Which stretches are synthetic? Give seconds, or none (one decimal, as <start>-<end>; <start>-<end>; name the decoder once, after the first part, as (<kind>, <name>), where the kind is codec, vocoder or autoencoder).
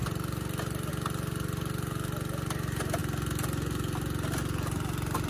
none